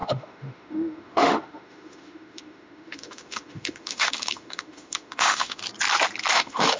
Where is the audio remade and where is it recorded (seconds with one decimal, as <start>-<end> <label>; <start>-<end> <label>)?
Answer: 0.0-5.6 remade; 5.6-6.3 recorded; 6.3-6.8 remade